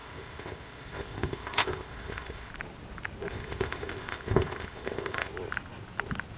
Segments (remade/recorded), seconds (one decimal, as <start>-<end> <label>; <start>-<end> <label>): 0.0-2.5 remade; 2.5-3.3 recorded; 3.3-5.3 remade; 5.3-6.4 recorded